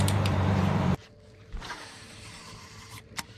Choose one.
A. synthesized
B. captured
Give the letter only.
A